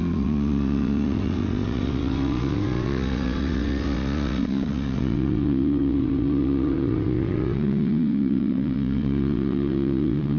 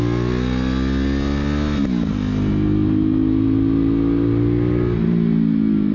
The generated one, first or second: first